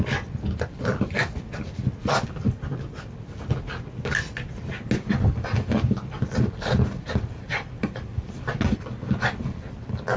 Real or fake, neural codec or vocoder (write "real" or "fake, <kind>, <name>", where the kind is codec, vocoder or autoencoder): real